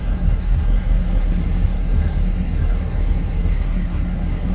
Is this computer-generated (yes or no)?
yes